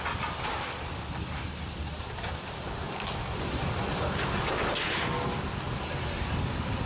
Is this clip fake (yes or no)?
no